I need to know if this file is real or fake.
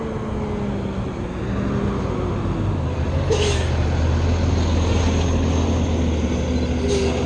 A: real